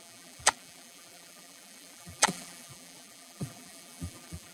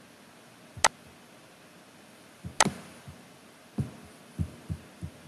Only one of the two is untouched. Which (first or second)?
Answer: second